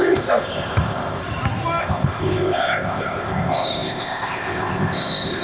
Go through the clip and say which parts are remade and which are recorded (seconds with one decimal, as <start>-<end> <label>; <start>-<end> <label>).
0.0-1.2 remade; 1.2-1.8 recorded; 1.8-5.4 remade